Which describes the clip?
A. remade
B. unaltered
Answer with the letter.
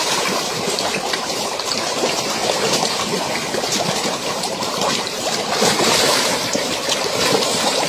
A